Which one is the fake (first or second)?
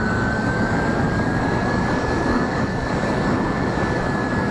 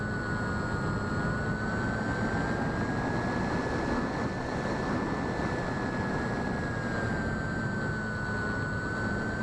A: first